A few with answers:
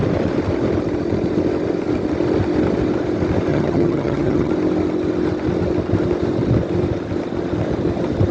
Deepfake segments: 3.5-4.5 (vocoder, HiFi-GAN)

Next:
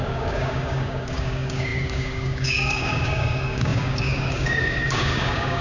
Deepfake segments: 0.0-5.6 (codec, DAC)

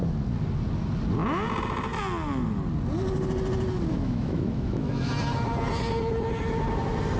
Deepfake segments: 3.9-5.1 (autoencoder, DAC-VAE)